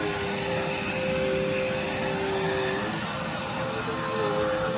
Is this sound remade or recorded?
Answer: recorded